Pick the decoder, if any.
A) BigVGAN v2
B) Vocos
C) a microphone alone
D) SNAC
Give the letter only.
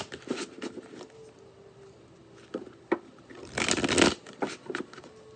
C